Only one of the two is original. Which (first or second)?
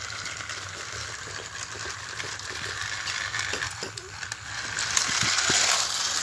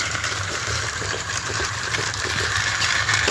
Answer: first